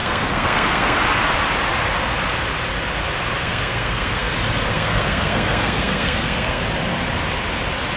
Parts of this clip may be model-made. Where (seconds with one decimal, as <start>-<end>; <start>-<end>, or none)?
0.0-1.0; 3.4-4.3; 4.7-6.6